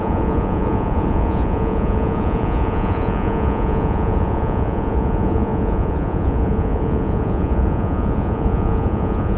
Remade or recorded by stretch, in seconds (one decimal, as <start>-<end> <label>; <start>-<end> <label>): 0.0-9.4 remade